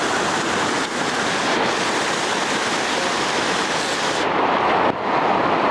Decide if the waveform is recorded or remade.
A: recorded